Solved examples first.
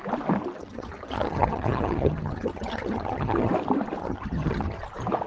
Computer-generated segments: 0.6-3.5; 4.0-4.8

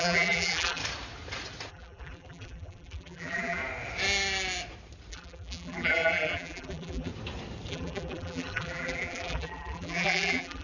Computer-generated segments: 0.0-0.8; 1.7-3.6; 5.1-7.1; 7.7-10.6

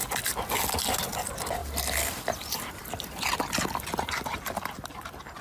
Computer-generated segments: 1.6-4.1

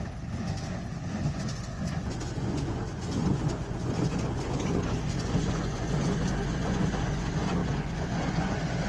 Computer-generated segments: 0.0-8.9

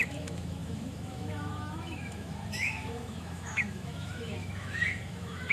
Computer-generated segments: 0.0-5.5

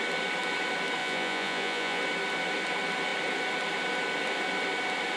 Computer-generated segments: 1.0-2.0

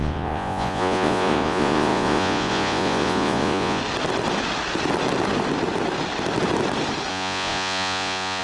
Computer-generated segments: 0.0-3.8; 7.1-8.4

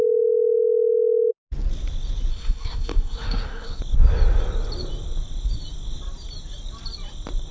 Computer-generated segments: 2.3-3.8